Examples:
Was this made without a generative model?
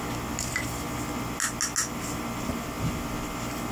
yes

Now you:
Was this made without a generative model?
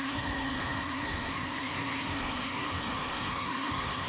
no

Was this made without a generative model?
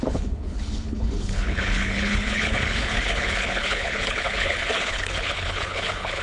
no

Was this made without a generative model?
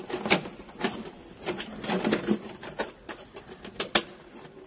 yes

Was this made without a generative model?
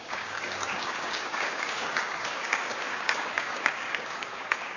no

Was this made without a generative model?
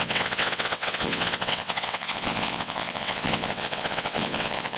no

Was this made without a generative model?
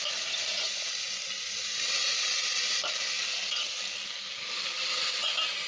yes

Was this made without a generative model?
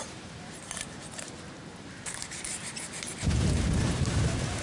no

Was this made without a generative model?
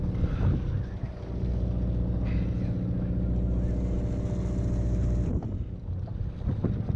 yes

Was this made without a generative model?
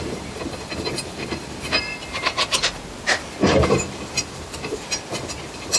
no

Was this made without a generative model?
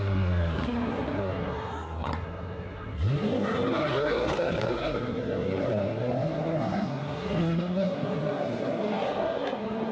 no